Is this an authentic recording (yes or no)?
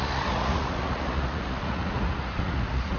no